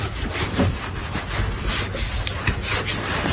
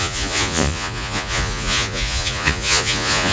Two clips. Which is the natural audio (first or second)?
first